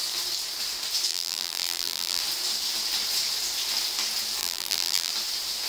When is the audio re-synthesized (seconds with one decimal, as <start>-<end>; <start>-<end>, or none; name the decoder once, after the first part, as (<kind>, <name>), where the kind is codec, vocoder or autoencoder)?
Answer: 1.1-2.2 (vocoder, BigVGAN v2); 4.4-5.1